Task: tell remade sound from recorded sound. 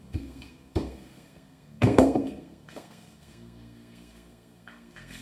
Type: remade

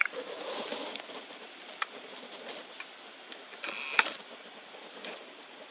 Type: recorded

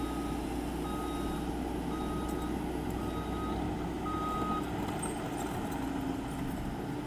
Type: recorded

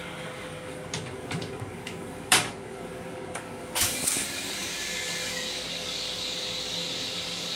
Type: remade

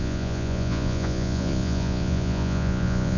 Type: remade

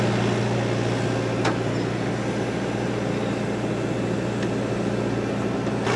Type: recorded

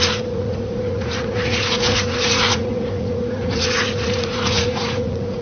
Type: remade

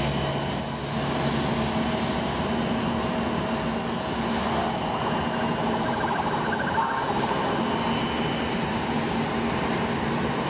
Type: recorded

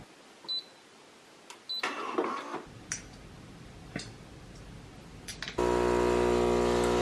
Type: recorded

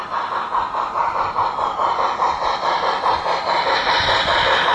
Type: recorded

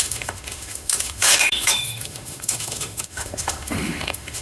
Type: remade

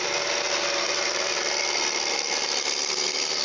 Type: recorded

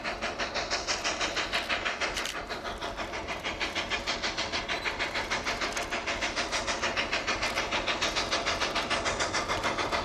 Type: recorded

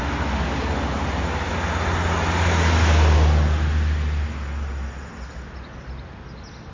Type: recorded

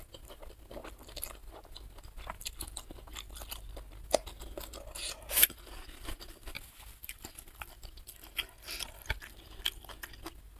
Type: recorded